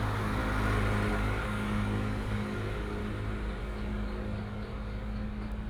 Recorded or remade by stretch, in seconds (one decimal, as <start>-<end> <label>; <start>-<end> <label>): 0.0-0.4 remade; 0.4-1.1 recorded; 1.1-3.0 remade; 3.0-3.6 recorded; 3.6-5.7 remade